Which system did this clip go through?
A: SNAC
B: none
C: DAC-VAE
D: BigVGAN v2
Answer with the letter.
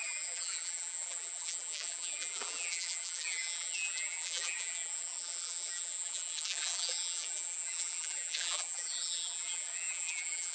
D